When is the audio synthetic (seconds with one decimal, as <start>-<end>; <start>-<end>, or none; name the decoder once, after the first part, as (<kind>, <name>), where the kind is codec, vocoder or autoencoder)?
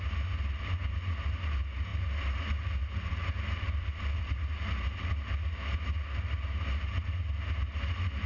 none